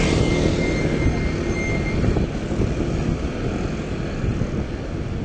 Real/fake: real